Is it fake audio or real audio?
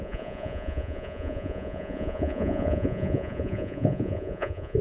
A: fake